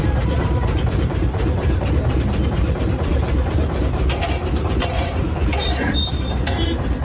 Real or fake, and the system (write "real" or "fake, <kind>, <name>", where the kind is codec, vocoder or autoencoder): fake, vocoder, BigVGAN v2